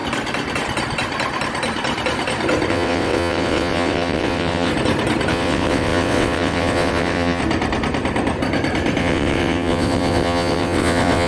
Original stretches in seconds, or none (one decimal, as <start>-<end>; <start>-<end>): 0.0-2.7; 4.7-5.3; 7.4-9.0